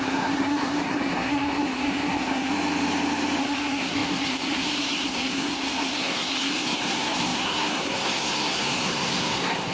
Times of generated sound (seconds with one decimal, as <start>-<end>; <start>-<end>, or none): 0.0-2.5; 3.4-9.7